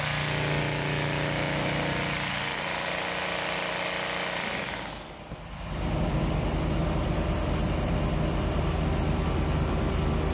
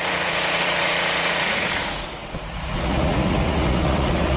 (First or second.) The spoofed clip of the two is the second